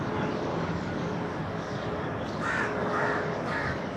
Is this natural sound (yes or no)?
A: no